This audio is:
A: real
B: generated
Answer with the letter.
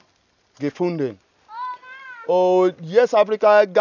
A